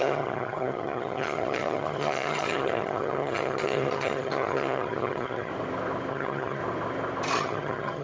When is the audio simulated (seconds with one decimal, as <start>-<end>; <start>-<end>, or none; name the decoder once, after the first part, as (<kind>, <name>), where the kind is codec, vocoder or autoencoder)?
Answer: 0.0-5.5 (vocoder, HiFi-GAN); 6.1-6.6; 7.3-8.0